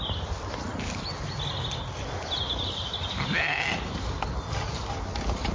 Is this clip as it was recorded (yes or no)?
yes